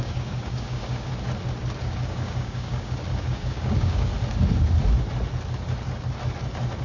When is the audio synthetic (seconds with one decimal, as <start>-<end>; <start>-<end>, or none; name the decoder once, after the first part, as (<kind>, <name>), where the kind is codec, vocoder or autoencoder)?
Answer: 0.0-1.1 (codec, DAC); 1.8-4.1